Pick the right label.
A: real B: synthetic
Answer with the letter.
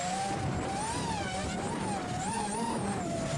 B